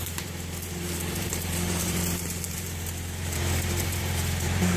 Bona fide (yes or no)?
no